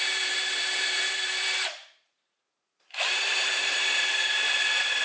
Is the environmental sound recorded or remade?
remade